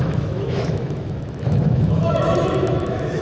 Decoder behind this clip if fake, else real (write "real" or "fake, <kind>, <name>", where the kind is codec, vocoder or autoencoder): fake, autoencoder, DAC-VAE